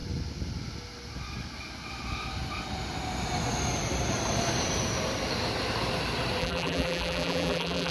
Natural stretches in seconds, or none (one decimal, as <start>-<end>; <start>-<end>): 0.0-6.4